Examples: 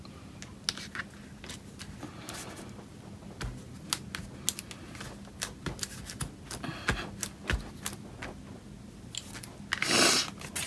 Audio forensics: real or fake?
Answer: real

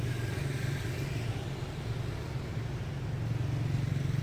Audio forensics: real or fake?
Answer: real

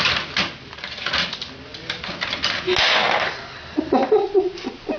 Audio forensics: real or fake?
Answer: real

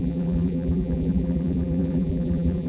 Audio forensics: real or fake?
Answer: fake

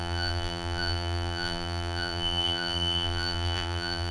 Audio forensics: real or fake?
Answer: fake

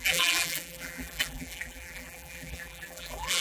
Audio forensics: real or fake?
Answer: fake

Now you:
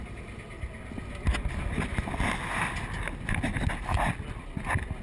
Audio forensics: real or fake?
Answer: real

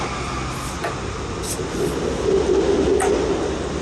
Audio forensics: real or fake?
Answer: real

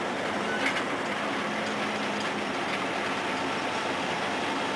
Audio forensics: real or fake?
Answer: real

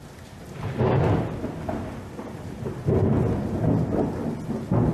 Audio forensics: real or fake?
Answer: real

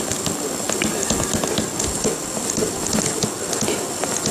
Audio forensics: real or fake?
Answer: real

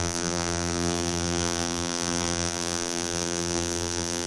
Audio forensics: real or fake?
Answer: fake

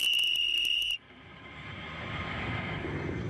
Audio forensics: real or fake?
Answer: fake